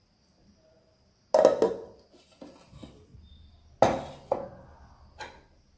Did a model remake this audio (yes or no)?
no